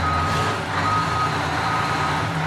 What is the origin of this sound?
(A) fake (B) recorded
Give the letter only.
B